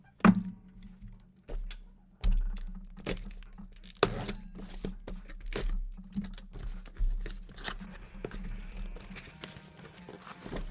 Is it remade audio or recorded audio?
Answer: recorded